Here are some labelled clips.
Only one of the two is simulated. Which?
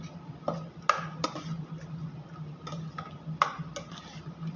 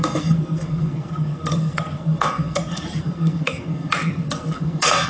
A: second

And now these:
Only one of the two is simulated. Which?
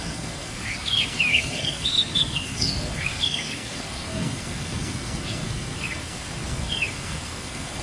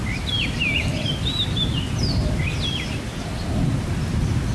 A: first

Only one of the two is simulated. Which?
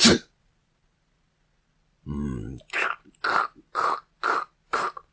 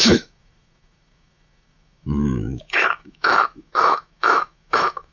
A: second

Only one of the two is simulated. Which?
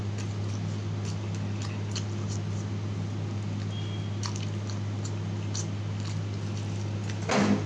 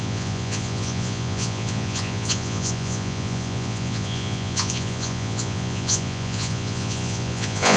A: second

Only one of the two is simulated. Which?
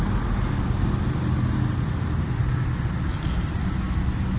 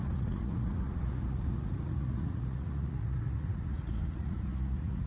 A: second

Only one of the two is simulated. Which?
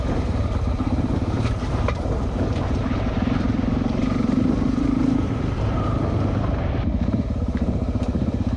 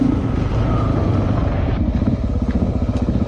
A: first